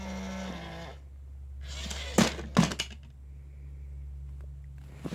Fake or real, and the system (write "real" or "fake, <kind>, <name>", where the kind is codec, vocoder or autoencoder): real